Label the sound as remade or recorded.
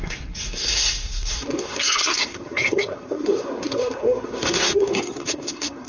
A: remade